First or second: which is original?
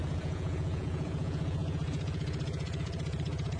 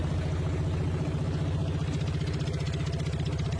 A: second